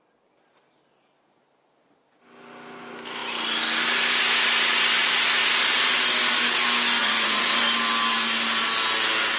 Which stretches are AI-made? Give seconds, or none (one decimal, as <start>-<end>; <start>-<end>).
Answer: 7.0-7.6